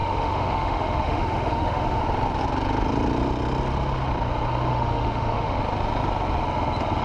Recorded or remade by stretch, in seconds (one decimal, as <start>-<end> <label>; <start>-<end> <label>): 0.0-2.0 remade; 2.0-4.7 recorded; 4.7-5.6 remade; 5.6-7.0 recorded